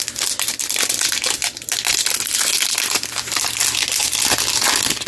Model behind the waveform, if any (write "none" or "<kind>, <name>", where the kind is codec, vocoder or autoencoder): none